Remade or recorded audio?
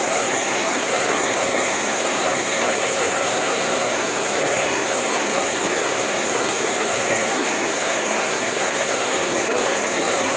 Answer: remade